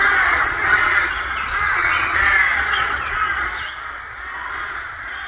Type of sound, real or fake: fake